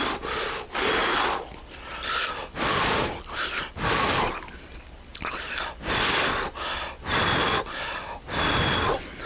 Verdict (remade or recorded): recorded